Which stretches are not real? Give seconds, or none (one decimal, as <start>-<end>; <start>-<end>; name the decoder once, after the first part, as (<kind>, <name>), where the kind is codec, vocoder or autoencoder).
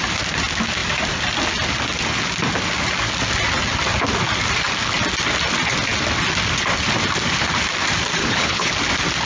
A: 8.2-8.7 (codec, HILCodec)